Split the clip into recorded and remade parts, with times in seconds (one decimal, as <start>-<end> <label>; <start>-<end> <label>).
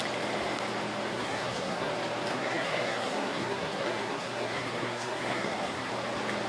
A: 0.0-1.1 recorded; 1.1-1.9 remade; 1.9-2.3 recorded; 2.3-5.9 remade; 5.9-6.5 recorded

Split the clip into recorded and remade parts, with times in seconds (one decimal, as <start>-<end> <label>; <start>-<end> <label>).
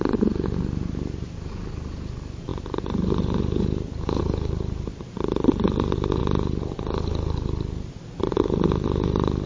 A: 0.0-2.5 recorded; 2.5-4.9 remade; 4.9-9.5 recorded